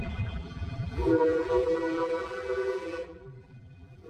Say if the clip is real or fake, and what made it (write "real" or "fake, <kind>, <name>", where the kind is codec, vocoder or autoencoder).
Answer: fake, vocoder, BigVGAN v2